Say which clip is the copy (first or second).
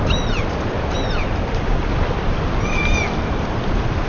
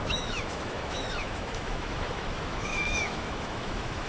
second